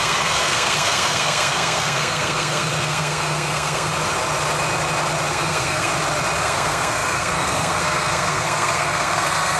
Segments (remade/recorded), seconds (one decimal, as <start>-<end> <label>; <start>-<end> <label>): 0.0-3.9 remade; 3.9-5.3 recorded; 5.3-5.9 remade; 5.9-6.4 recorded; 6.4-9.6 remade